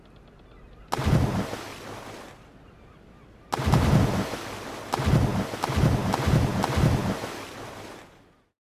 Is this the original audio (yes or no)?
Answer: yes